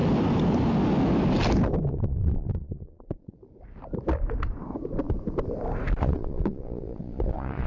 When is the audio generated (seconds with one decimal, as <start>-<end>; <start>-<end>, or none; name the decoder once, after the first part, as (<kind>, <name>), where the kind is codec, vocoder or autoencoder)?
1.9-3.4 (vocoder, Vocos); 6.0-7.7